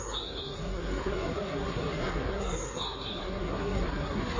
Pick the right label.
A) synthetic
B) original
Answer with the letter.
A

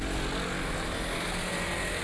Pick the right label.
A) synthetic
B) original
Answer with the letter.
B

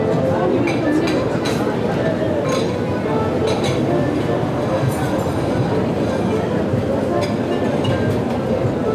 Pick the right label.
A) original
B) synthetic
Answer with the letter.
A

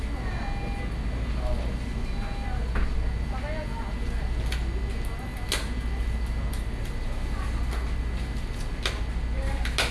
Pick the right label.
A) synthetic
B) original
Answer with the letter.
B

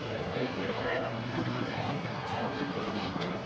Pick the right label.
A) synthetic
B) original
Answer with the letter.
A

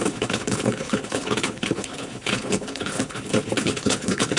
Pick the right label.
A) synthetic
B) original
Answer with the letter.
A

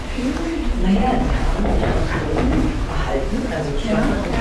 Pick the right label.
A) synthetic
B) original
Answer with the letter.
B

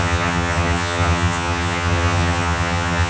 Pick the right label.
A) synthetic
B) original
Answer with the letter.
A